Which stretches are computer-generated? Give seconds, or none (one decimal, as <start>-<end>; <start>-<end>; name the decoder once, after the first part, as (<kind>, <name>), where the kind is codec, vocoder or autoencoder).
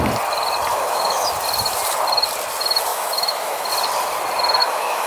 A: 0.7-1.3 (autoencoder, DAC-VAE); 2.9-3.7; 4.6-5.1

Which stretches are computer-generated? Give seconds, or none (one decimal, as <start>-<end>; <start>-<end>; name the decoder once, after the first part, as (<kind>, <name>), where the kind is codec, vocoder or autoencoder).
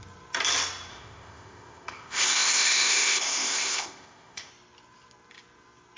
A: 0.9-4.5 (codec, ZipCodec)